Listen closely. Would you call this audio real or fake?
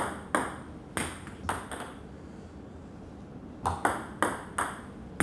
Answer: real